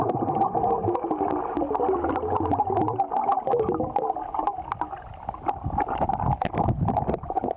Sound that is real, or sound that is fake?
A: real